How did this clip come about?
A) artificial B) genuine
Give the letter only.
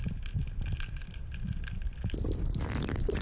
B